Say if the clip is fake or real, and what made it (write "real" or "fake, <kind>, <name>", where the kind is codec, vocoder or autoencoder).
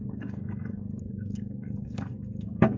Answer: fake, codec, SNAC